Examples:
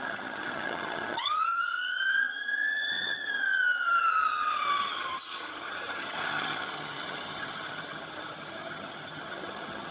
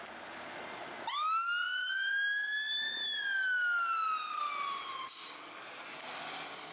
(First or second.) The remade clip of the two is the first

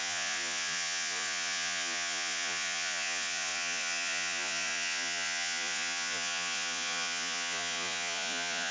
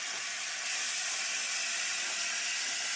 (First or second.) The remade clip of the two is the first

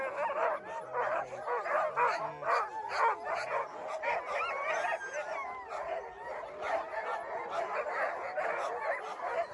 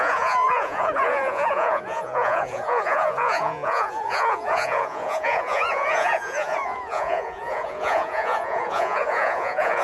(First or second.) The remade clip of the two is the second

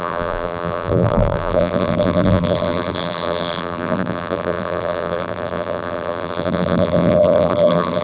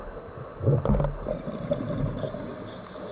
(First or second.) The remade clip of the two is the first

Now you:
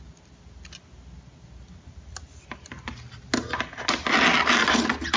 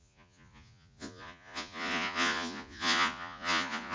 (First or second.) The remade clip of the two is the second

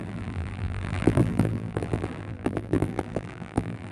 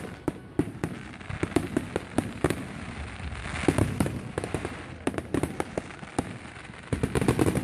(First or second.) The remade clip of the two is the first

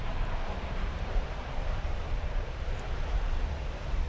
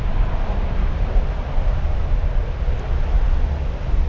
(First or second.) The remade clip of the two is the first